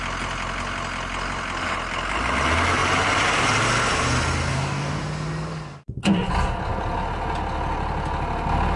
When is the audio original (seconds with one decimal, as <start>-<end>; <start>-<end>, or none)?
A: 0.0-4.5; 5.0-8.8